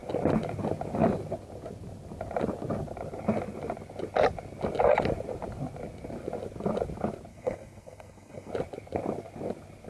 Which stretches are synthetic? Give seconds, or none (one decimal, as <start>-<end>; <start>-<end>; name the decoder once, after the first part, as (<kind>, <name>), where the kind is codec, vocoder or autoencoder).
7.3-8.5 (codec, SNAC)